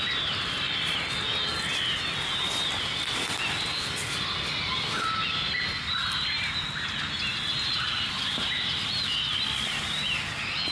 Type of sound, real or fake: real